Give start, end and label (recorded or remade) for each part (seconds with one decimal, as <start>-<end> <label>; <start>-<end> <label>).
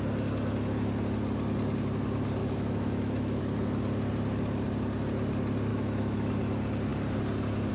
0.0-2.4 recorded; 2.4-3.4 remade; 3.4-5.7 recorded; 5.7-6.3 remade; 6.3-7.7 recorded